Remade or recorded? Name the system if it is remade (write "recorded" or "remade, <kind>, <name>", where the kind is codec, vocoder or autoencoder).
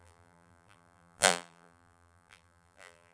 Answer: remade, vocoder, BigVGAN v2